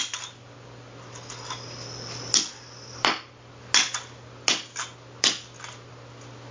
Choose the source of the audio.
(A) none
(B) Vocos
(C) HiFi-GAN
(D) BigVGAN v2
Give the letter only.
A